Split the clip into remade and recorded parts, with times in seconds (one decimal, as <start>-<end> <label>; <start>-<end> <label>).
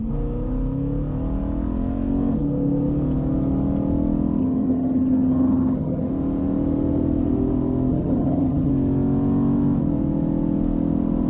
0.0-4.4 recorded; 4.4-6.1 remade; 6.1-7.9 recorded; 7.9-8.7 remade; 8.7-11.3 recorded